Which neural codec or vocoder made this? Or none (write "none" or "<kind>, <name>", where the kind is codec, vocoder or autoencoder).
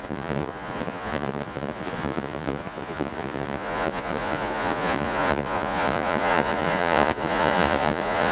vocoder, Vocos